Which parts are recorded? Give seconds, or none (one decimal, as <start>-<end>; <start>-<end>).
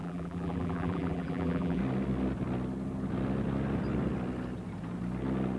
1.8-5.6